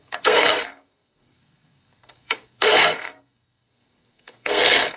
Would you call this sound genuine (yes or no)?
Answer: no